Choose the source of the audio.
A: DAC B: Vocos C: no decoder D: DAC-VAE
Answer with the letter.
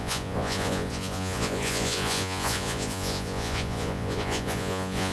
B